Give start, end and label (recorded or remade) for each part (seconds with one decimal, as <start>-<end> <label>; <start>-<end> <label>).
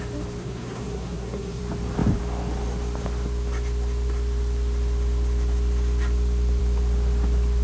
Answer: 0.0-0.4 recorded; 0.4-1.6 remade; 1.6-7.6 recorded